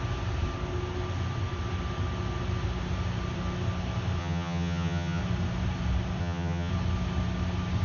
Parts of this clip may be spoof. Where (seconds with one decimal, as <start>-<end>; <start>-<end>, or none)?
4.2-5.2; 6.2-6.7